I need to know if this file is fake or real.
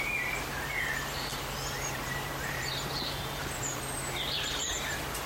fake